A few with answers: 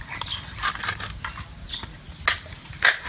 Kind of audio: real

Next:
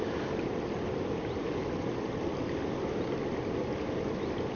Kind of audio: real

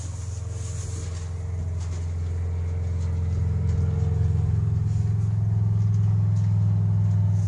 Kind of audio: real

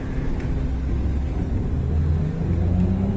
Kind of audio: real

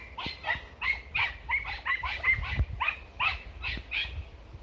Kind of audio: real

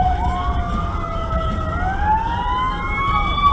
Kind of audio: real